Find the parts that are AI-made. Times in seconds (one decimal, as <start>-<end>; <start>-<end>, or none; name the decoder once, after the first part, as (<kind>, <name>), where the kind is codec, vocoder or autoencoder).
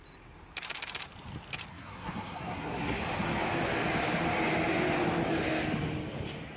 1.7-3.0 (codec, SNAC)